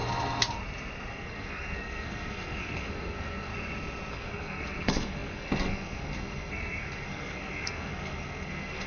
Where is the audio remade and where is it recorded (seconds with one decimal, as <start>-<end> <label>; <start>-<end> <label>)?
0.0-1.1 recorded; 1.1-3.5 remade; 3.5-4.1 recorded; 4.1-8.9 remade